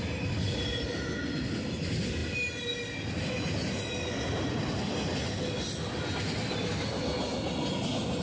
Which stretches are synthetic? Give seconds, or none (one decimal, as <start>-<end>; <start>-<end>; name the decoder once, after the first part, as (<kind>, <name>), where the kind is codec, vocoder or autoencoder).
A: none